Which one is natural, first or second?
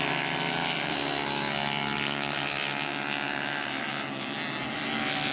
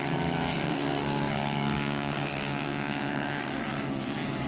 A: first